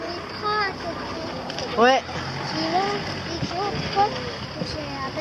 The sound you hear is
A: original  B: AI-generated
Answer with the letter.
A